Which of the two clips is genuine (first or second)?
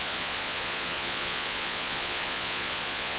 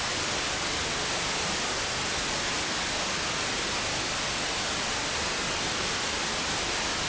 second